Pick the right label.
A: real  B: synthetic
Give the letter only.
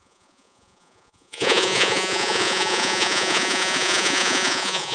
B